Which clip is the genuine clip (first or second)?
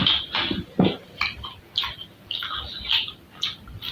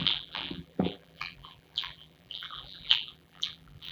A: first